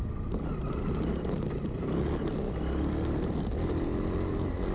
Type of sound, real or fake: real